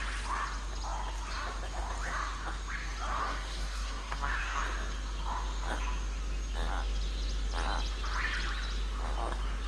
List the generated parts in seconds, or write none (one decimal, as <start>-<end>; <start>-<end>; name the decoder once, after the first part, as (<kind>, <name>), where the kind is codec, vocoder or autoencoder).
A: 3.2-4.6 (codec, SNAC)